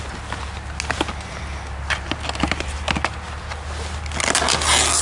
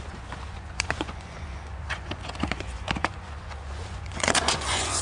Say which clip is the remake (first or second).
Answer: second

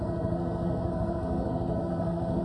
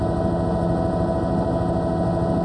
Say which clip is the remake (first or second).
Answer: first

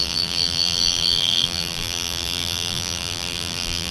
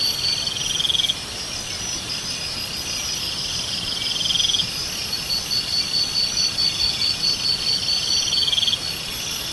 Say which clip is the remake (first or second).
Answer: first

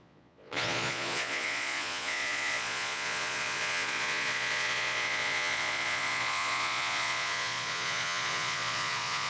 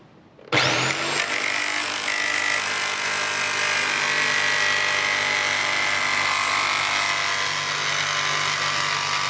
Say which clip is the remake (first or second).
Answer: first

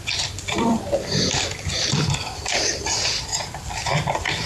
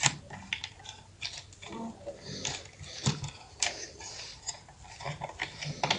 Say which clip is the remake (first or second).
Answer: first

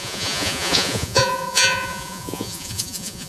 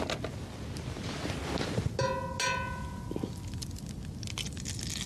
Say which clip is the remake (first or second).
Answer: first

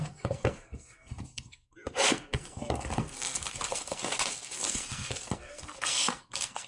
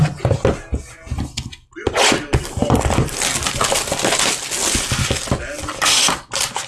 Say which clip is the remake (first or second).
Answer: first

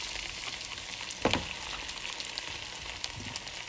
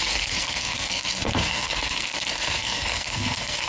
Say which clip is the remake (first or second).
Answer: second